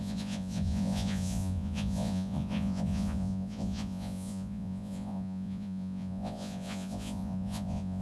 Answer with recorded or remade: remade